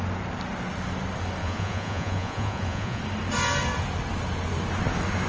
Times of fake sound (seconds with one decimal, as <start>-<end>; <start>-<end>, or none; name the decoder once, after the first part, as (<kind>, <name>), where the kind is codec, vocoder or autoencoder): 1.4-3.0 (vocoder, Vocos)